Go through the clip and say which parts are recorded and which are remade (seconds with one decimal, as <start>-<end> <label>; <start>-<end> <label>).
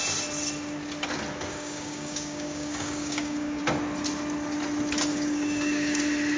0.0-1.5 recorded; 1.5-3.6 remade; 3.6-5.1 recorded; 5.1-6.0 remade; 6.0-6.4 recorded